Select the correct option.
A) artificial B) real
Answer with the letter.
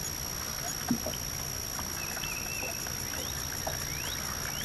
B